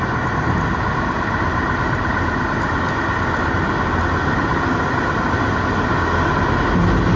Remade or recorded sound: recorded